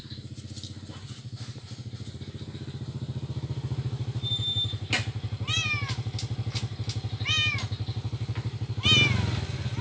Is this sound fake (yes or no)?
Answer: no